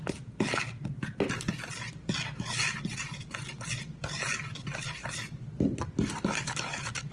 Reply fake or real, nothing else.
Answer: real